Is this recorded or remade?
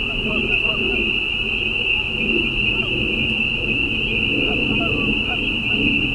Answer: recorded